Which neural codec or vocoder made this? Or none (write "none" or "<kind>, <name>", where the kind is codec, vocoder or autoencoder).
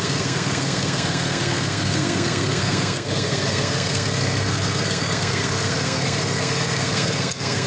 codec, SNAC